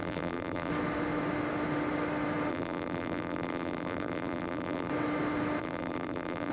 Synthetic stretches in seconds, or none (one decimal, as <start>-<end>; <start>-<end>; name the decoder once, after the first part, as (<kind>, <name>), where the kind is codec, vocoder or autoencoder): 0.0-0.7 (vocoder, BigVGAN v2); 2.5-4.9; 5.6-6.5

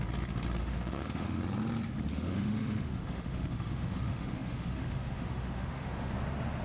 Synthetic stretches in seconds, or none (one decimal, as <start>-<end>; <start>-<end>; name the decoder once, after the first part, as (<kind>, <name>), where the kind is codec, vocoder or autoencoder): 0.6-1.4 (autoencoder, DAC-VAE); 2.1-6.1

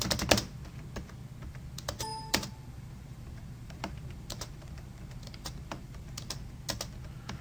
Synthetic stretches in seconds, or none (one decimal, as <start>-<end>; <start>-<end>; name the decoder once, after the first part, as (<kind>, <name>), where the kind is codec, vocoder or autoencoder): 2.1-6.5 (vocoder, BigVGAN v2)

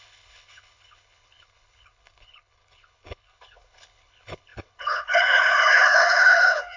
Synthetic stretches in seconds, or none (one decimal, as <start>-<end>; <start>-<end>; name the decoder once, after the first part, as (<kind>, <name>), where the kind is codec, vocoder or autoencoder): 0.0-6.8 (codec, HILCodec)

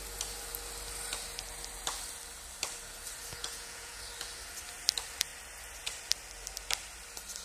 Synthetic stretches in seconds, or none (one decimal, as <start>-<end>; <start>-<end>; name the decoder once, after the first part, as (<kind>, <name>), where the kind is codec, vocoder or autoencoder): 3.3-4.0 (vocoder, Vocos)

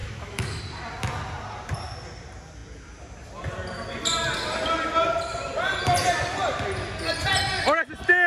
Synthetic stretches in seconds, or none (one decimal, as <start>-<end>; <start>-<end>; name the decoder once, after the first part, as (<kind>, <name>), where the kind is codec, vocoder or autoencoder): 0.0-0.6 (autoencoder, DAC-VAE)

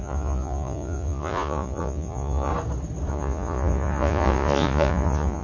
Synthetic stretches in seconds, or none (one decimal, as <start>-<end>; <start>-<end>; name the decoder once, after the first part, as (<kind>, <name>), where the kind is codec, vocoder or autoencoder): 0.0-2.5 (vocoder, Vocos); 3.1-5.4